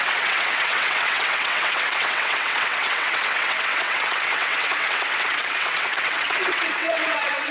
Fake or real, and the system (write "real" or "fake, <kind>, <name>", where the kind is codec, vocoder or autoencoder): fake, vocoder, WaveNeXt